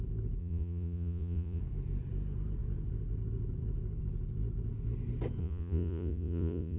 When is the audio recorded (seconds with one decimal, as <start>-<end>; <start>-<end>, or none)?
0.0-0.4; 1.6-5.4

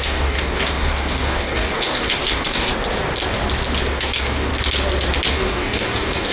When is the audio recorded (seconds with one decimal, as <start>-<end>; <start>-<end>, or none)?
2.7-4.0; 4.5-5.3

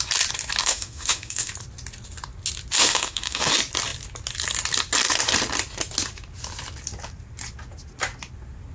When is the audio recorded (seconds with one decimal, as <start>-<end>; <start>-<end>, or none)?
0.0-0.6; 1.5-2.8; 3.5-8.7

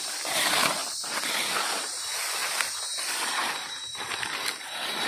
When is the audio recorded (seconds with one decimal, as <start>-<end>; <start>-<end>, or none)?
0.0-0.8; 1.4-5.1

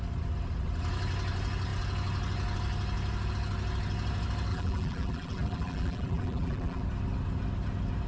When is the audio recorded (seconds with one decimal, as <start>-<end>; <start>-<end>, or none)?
0.0-4.5; 6.8-8.1